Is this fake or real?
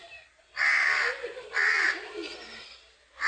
real